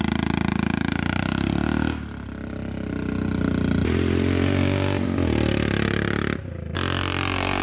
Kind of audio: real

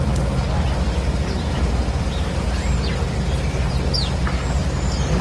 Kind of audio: real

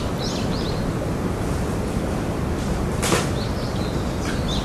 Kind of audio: real